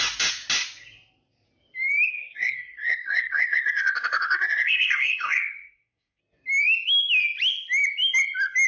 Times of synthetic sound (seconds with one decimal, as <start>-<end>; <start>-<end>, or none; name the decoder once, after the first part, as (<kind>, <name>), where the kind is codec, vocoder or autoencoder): 2.1-6.2 (codec, SNAC)